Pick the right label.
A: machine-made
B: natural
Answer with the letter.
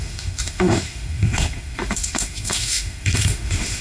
A